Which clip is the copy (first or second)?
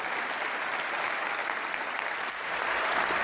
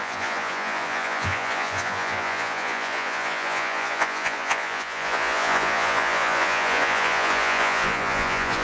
second